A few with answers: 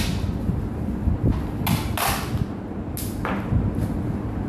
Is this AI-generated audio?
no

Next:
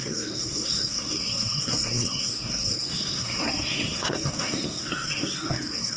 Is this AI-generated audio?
yes